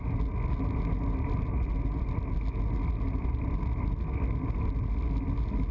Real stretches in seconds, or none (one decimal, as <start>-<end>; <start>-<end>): 0.0-5.7